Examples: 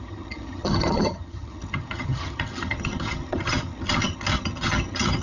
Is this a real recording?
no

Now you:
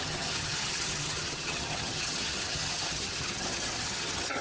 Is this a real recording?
no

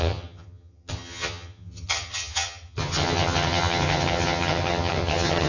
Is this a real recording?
no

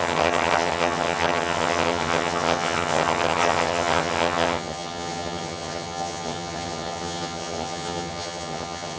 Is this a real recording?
no